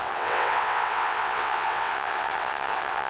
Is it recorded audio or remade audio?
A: remade